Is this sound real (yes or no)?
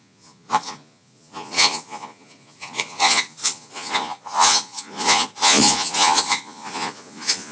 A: no